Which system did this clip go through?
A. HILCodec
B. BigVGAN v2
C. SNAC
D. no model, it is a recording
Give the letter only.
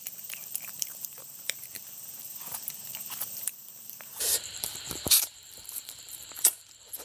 B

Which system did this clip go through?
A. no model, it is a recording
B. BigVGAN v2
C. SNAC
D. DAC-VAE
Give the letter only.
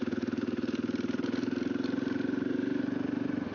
B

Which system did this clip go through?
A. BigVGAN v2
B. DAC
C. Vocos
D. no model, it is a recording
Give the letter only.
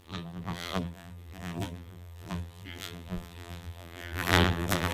A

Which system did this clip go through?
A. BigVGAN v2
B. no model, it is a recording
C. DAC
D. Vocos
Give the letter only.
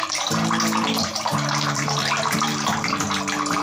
A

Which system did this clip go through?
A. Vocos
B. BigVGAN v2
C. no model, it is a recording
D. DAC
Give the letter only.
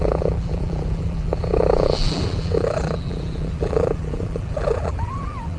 B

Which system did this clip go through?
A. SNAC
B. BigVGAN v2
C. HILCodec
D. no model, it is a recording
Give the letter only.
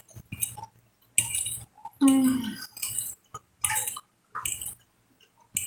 D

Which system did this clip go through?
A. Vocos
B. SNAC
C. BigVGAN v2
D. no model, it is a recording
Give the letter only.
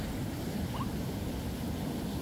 D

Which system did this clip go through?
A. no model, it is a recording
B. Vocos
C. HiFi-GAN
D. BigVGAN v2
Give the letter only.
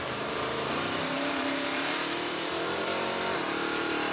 D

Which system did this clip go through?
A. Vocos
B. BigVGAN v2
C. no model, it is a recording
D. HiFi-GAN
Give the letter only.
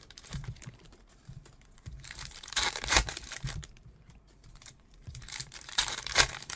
B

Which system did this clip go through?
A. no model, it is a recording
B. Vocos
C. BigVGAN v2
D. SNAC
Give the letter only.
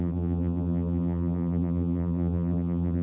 C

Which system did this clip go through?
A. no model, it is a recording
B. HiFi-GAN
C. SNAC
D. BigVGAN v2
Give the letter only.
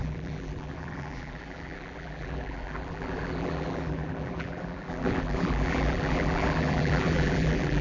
D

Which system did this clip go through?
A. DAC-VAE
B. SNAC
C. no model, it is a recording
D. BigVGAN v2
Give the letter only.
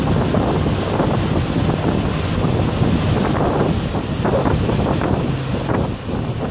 C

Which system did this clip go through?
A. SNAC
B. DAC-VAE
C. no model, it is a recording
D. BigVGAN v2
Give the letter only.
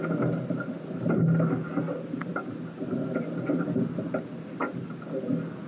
C